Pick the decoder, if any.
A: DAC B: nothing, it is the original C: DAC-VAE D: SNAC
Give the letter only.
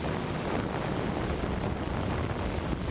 B